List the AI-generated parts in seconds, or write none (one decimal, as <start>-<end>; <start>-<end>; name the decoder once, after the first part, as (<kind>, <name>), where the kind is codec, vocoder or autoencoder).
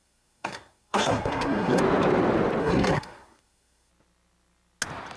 0.0-1.8 (codec, SNAC); 2.6-3.9